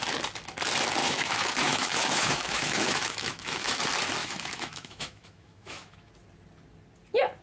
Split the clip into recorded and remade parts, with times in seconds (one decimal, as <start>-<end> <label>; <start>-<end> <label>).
0.0-1.0 recorded; 1.0-3.8 remade; 3.8-4.2 recorded; 4.2-6.1 remade; 6.1-7.4 recorded